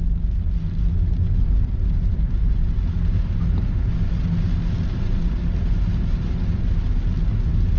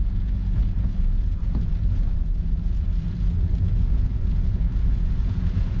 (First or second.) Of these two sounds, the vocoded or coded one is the second